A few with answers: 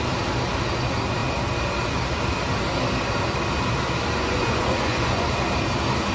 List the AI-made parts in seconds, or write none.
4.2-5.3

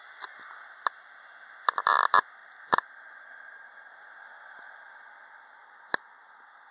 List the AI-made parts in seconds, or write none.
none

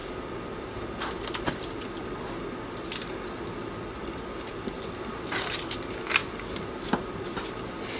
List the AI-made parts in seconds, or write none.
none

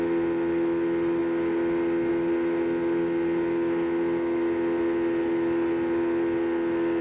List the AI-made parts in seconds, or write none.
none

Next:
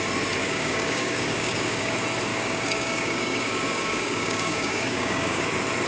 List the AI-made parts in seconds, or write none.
0.4-1.9; 2.3-5.4

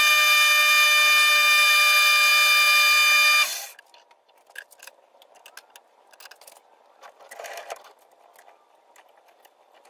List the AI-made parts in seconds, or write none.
none